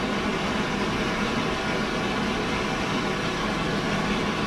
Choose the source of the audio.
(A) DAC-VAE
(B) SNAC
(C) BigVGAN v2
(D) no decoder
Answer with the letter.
D